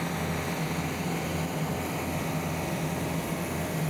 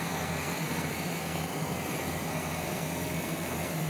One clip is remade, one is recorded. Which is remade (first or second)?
second